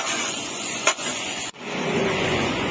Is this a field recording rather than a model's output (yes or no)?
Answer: no